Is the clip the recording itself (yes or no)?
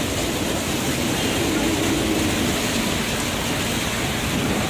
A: no